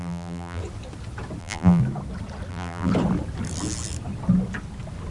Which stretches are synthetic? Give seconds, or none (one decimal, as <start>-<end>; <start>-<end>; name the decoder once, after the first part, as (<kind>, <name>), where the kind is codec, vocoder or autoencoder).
0.0-0.6 (vocoder, BigVGAN v2); 1.4-1.8; 2.5-2.9